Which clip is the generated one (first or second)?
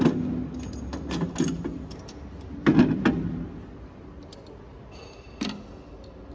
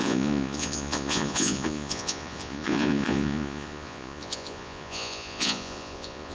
second